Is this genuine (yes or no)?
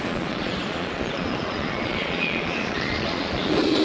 no